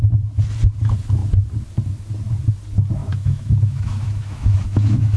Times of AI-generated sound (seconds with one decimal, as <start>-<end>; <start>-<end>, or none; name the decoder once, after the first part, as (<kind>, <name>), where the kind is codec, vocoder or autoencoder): 3.0-5.2 (autoencoder, DAC-VAE)